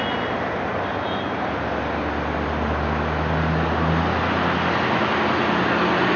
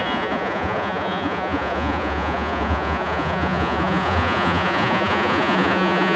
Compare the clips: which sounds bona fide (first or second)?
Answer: first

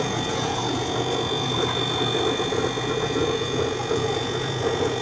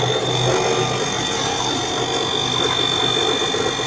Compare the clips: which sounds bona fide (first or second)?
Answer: second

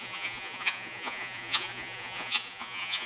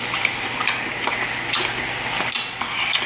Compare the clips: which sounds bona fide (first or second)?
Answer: second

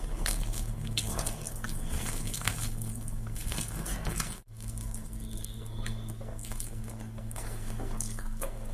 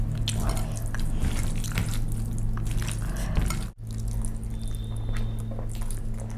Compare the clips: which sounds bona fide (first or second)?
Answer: second